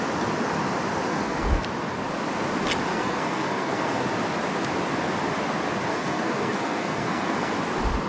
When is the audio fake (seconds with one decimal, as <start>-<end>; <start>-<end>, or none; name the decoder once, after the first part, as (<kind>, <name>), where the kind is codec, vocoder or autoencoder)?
1.1-1.6 (codec, SNAC); 2.9-4.1; 5.9-7.5